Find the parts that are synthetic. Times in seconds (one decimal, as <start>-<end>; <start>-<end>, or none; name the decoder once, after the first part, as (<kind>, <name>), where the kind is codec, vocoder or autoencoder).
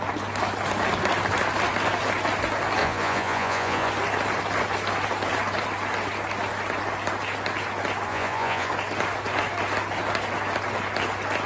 2.8-3.9 (vocoder, Vocos); 8.1-8.7